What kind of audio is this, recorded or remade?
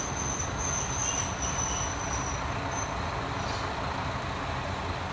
recorded